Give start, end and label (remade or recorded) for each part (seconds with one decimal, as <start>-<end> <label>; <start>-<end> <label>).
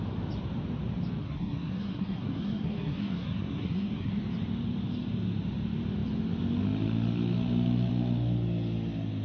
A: 0.0-1.2 recorded; 1.2-4.1 remade; 4.1-9.2 recorded